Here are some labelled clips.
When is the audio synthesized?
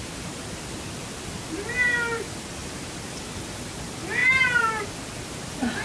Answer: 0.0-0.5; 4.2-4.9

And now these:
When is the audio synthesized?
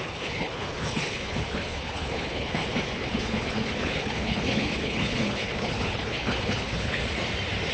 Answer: 0.0-2.6; 3.1-7.0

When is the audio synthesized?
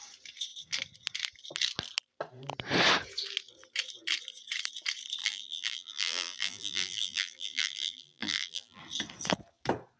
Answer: 5.2-8.8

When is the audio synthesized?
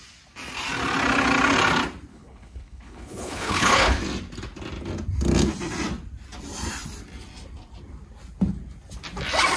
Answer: 2.1-4.0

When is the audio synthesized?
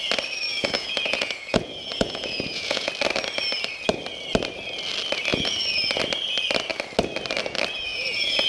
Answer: 0.5-2.9; 5.3-6.0; 7.9-8.5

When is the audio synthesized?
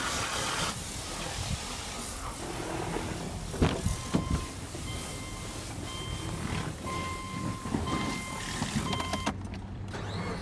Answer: none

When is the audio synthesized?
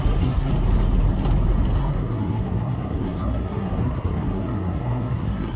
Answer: 0.0-0.5; 1.8-5.6